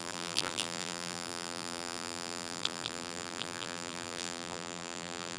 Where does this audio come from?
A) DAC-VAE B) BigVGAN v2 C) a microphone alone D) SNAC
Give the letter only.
B